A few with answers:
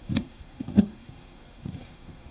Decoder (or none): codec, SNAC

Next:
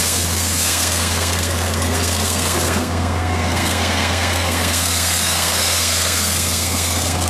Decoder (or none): codec, SNAC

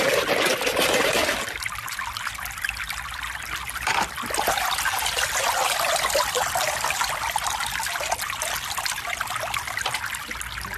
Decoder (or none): none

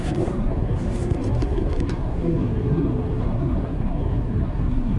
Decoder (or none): codec, SNAC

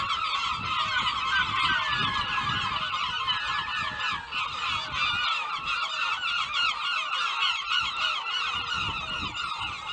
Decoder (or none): none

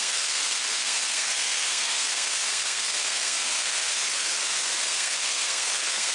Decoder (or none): codec, SNAC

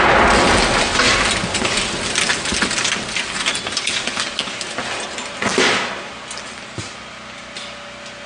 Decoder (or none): none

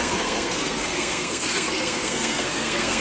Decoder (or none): codec, SNAC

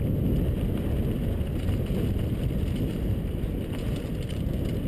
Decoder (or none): none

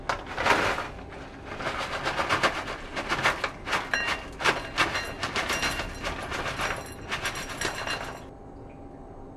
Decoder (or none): none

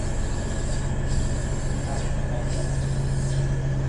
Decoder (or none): none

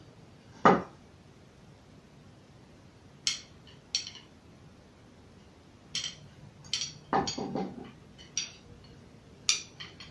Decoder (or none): none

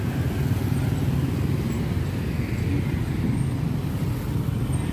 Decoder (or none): none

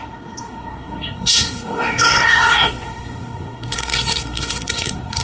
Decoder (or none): codec, SNAC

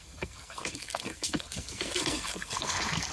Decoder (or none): codec, SNAC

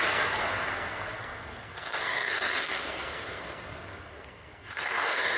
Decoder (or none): codec, SNAC